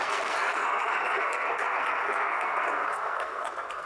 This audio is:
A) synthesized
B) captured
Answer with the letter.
A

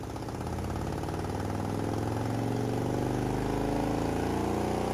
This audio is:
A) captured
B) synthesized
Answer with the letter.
A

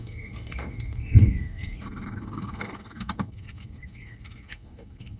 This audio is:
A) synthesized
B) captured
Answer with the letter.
A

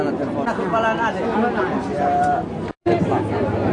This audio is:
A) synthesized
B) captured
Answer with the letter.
B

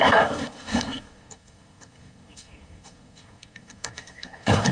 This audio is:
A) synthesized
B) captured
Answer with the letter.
A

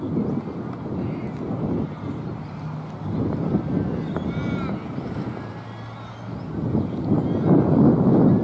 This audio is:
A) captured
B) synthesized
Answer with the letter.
A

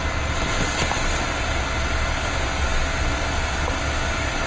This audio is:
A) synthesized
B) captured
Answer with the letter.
B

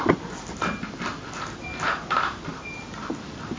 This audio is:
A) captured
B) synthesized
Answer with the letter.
A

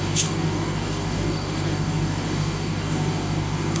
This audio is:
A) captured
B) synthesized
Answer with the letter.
B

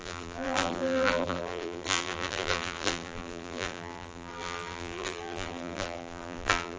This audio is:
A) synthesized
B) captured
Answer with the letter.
A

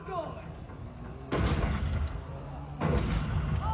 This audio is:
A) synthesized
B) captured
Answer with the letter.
B